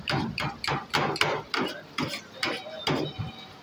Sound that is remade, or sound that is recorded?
recorded